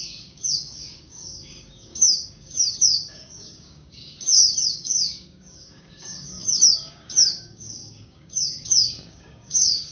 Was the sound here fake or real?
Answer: fake